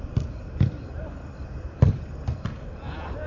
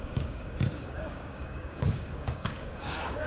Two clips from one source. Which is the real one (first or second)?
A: first